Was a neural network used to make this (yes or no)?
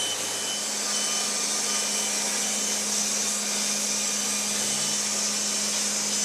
no